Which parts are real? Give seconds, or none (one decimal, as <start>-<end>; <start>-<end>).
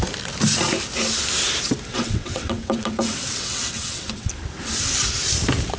0.0-1.9; 4.3-5.8